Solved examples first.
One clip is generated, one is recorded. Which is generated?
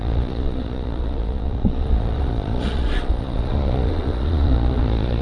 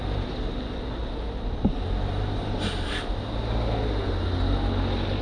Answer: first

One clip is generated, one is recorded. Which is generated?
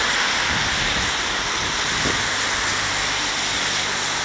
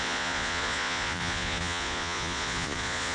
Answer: second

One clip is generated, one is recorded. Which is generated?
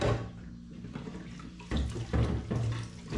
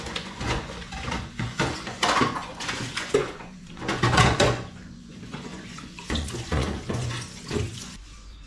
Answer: second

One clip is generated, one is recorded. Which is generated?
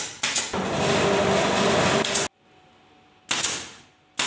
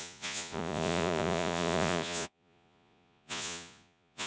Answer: second